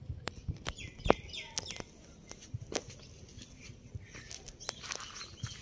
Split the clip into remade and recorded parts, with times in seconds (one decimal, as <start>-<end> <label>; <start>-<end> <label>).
0.0-5.6 recorded

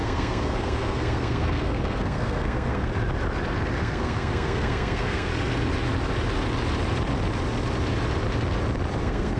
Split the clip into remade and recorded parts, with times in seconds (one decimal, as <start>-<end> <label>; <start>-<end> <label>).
0.0-2.9 remade; 2.9-3.8 recorded; 3.8-5.3 remade; 5.3-9.0 recorded; 9.0-9.4 remade

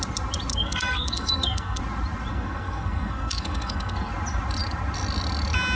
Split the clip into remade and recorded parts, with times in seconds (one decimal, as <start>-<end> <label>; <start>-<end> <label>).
0.0-0.5 recorded; 0.5-1.8 remade; 1.8-2.3 recorded; 2.3-4.1 remade; 4.1-5.8 recorded

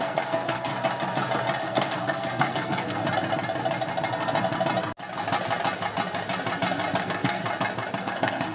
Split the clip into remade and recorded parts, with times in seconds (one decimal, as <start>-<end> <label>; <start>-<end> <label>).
0.0-0.7 remade; 0.7-1.6 recorded; 1.6-3.0 remade; 3.0-7.0 recorded; 7.0-7.4 remade; 7.4-8.0 recorded; 8.0-8.5 remade

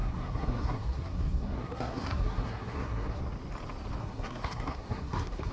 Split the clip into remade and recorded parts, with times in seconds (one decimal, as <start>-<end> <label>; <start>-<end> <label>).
0.0-3.2 remade; 3.2-4.0 recorded; 4.0-5.5 remade